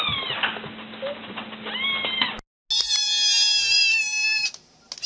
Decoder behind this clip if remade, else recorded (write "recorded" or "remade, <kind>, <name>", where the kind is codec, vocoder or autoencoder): recorded